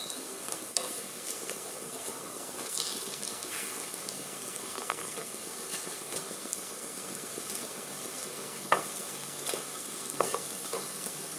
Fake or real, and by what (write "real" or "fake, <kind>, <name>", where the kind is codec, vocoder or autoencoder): fake, codec, SNAC